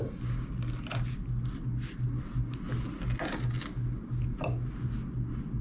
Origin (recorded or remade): recorded